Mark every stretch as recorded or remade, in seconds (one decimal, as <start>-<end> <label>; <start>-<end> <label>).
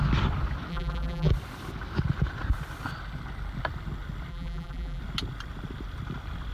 0.0-0.7 recorded; 0.7-1.3 remade; 1.3-4.3 recorded; 4.3-5.0 remade; 5.0-6.5 recorded